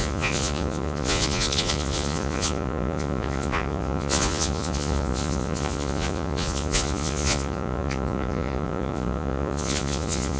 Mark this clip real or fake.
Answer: fake